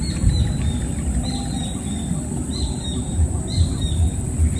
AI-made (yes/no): no